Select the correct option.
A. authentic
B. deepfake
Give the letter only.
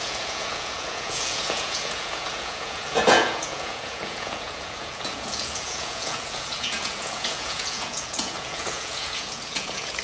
B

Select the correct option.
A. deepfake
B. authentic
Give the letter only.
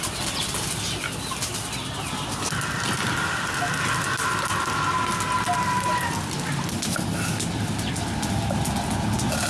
B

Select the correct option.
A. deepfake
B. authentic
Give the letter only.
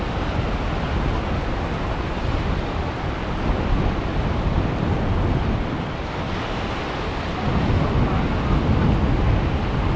B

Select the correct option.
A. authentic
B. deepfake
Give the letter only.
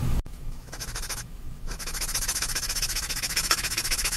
B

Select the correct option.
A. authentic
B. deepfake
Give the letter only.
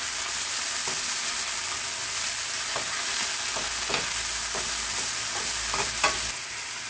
A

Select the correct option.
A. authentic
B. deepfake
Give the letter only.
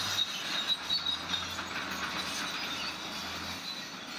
A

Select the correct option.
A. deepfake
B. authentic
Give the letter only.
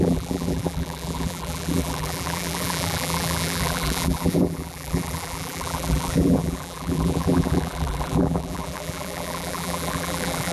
A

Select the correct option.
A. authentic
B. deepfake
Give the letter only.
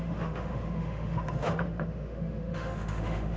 B